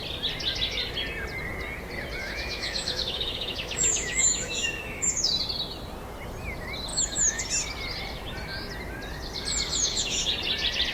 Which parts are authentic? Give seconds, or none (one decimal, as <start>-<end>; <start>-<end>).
0.0-2.2; 5.3-6.9; 7.4-9.7; 10.3-10.9